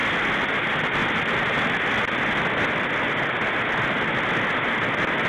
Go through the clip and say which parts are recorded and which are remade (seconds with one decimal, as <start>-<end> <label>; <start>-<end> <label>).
0.0-5.3 recorded